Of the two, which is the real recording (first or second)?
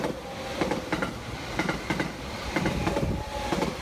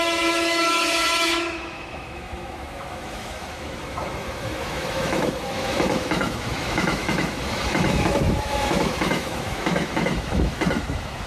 first